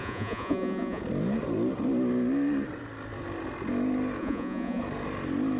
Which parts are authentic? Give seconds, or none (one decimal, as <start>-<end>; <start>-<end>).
1.0-4.2; 4.8-5.6